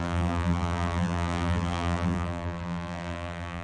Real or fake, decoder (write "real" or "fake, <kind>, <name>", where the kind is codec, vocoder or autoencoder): fake, vocoder, BigVGAN v2